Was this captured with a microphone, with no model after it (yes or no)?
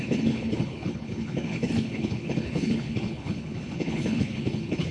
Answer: no